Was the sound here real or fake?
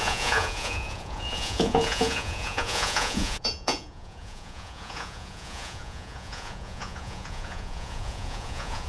fake